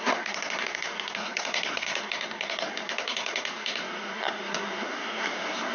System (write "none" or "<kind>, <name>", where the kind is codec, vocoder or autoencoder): codec, SNAC